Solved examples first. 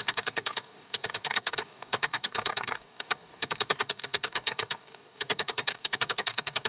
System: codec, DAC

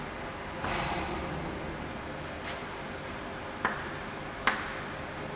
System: none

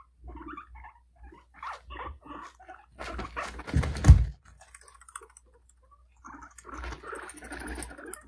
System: none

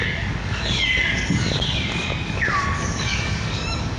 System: codec, DAC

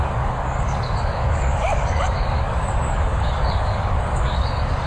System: codec, DAC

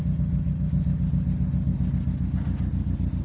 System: none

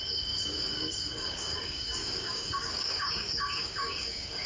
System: codec, DAC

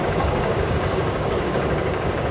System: codec, DAC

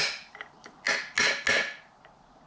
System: none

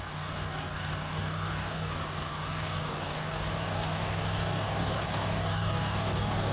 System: codec, DAC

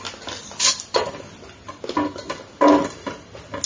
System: none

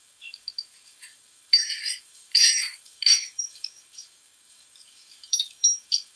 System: codec, DAC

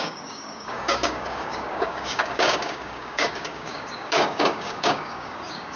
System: codec, DAC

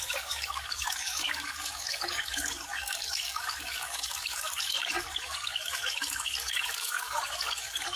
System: codec, DAC